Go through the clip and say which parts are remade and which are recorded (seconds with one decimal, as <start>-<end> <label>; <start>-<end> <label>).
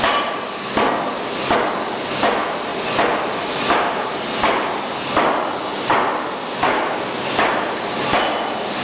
0.0-8.8 recorded